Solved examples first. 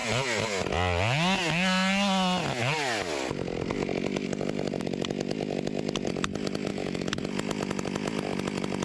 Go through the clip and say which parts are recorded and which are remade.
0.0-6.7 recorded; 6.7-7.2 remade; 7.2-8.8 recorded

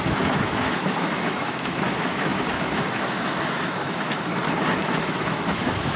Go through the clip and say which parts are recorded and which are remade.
0.0-4.3 remade; 4.3-4.8 recorded; 4.8-6.0 remade

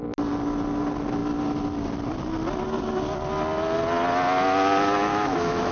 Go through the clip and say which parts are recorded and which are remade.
0.0-5.1 recorded; 5.1-5.7 remade

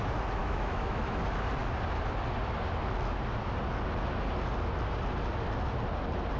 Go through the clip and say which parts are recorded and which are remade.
0.0-0.4 recorded; 0.4-1.2 remade; 1.2-6.4 recorded